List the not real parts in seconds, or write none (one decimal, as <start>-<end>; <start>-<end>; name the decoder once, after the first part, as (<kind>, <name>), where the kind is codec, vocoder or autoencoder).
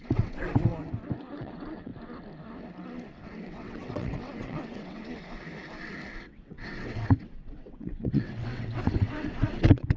0.0-0.7 (vocoder, WaveNeXt); 1.3-1.9; 3.4-5.0; 6.2-10.0